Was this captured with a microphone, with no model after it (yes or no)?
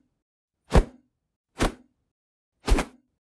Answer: yes